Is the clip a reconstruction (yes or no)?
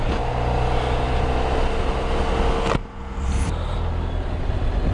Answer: no